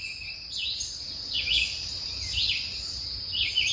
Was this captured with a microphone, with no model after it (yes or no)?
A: yes